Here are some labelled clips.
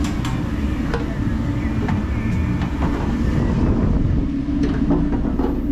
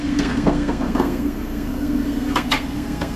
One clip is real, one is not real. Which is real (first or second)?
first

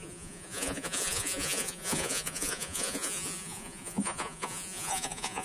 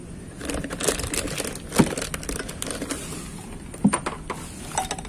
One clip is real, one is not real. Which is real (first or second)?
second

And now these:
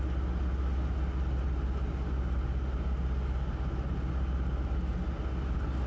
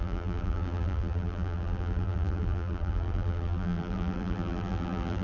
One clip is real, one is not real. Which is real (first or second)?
first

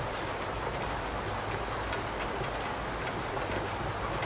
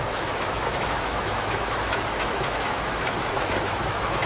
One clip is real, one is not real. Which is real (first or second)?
first